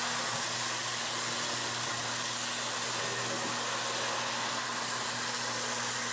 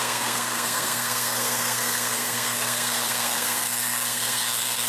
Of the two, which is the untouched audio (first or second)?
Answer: first